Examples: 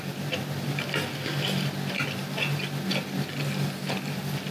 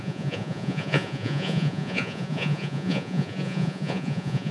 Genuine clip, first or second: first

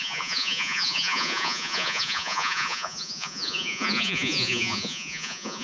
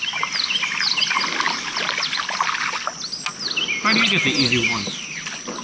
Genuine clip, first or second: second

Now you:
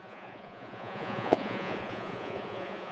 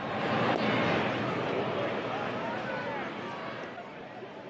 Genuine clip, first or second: second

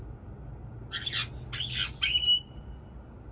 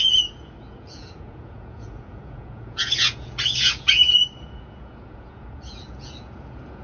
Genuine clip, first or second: first